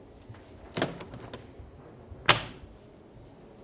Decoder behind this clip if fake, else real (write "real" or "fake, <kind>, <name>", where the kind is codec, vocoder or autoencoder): real